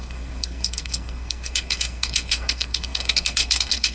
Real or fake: fake